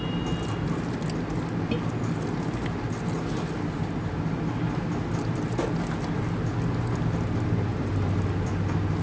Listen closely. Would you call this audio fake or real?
real